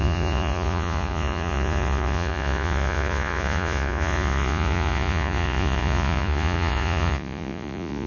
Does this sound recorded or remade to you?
remade